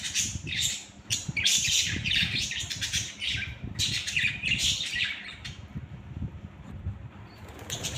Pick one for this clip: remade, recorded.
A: remade